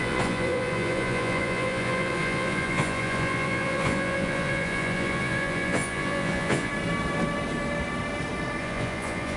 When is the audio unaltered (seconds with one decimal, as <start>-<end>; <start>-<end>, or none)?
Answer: 6.7-8.6